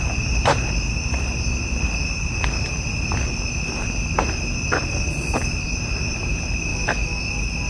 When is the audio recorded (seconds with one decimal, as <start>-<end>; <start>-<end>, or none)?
0.0-6.7; 7.2-7.7